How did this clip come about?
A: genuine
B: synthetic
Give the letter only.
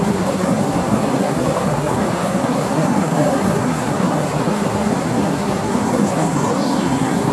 B